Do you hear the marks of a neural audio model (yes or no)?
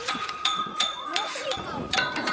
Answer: yes